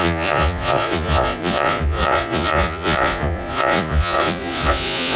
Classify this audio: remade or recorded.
remade